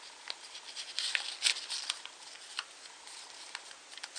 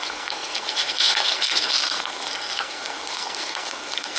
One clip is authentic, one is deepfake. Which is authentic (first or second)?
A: first